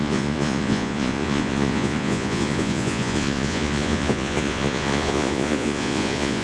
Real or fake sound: fake